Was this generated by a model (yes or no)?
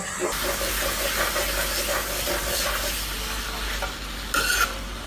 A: no